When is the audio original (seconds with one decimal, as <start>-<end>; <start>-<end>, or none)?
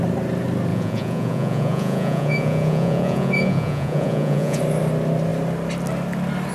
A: 0.0-0.7; 4.6-6.5